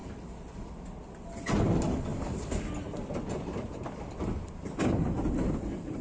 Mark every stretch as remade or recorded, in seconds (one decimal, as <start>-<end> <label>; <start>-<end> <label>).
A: 0.0-2.1 recorded; 2.1-6.0 remade